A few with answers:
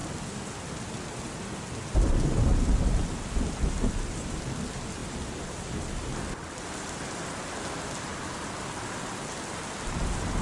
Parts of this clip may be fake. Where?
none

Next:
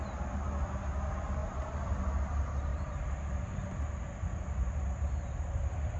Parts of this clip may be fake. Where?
1.4-2.0 (vocoder, BigVGAN v2); 2.7-6.0

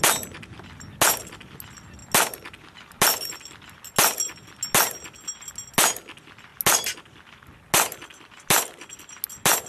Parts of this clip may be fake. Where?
none